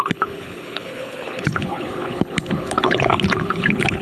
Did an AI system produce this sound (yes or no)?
yes